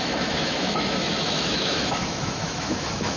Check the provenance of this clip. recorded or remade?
remade